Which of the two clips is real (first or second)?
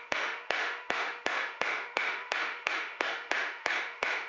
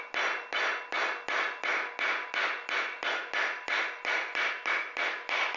second